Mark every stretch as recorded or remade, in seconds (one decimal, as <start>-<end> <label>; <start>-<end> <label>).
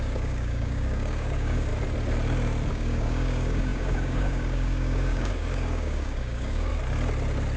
0.0-1.7 remade; 1.7-2.7 recorded; 2.7-6.7 remade; 6.7-7.6 recorded